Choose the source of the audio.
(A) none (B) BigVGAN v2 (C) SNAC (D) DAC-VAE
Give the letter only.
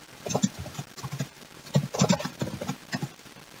B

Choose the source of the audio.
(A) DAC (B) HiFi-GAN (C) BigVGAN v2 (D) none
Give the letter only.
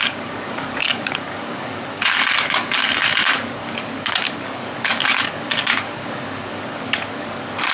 A